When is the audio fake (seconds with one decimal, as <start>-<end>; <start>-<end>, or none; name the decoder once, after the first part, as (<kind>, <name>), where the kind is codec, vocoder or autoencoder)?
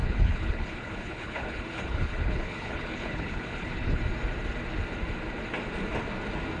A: 0.0-4.0 (codec, HILCodec)